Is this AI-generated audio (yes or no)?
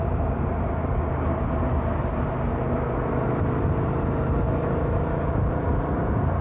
no